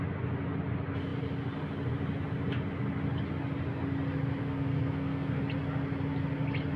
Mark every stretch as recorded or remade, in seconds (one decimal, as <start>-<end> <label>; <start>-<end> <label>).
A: 0.0-4.4 recorded; 4.4-5.4 remade; 5.4-6.8 recorded